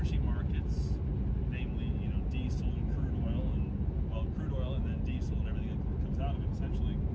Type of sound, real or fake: real